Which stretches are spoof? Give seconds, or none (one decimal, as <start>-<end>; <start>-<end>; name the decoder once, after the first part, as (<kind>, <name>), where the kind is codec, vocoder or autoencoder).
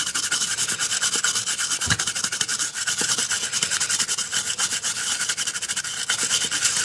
2.5-3.1 (vocoder, BigVGAN v2)